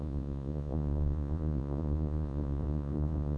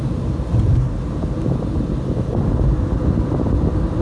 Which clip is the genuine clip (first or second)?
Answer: second